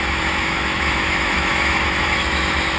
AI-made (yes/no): yes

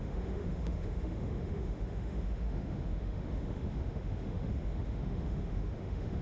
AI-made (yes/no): yes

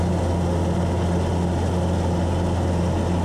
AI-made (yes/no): no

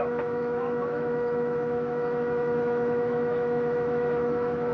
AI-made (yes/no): yes